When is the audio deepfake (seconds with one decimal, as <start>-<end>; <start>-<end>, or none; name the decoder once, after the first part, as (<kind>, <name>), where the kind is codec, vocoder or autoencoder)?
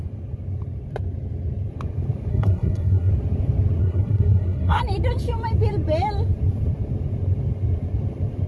2.3-3.1 (codec, SNAC); 3.8-4.8